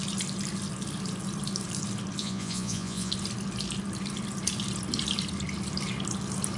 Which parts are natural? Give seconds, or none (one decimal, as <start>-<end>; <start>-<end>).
0.0-2.2; 3.1-6.6